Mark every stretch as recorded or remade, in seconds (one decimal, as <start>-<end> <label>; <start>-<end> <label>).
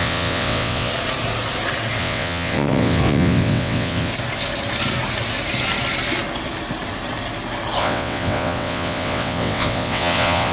0.0-0.9 remade; 0.9-2.0 recorded; 2.0-4.1 remade; 4.1-7.8 recorded; 7.8-10.5 remade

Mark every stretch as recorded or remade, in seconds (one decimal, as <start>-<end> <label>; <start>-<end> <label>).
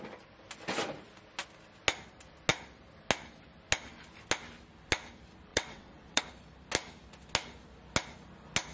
0.0-5.5 recorded; 5.5-6.2 remade; 6.2-8.7 recorded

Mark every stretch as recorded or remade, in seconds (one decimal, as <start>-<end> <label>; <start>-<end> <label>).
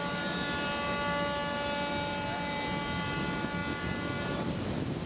0.0-5.1 recorded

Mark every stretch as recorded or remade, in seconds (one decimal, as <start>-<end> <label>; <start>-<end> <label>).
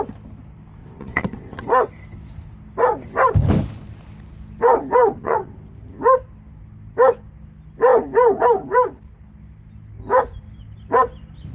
0.0-0.8 recorded; 0.8-1.9 remade; 1.9-5.0 recorded; 5.0-5.5 remade; 5.5-11.5 recorded